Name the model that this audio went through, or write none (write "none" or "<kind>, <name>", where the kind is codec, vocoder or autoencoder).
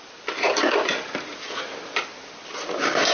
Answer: none